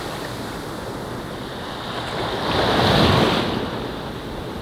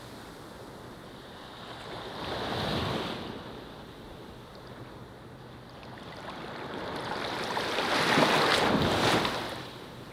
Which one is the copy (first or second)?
second